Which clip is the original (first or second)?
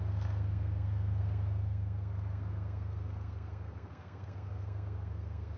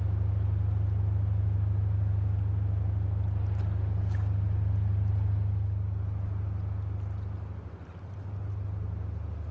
second